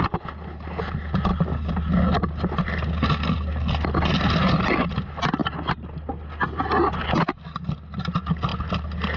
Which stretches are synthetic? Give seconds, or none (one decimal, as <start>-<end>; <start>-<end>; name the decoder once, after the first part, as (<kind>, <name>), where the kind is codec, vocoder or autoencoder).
none